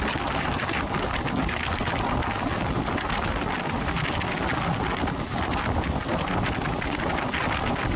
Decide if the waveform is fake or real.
real